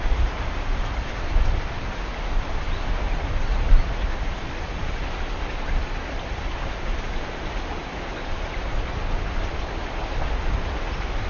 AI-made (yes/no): no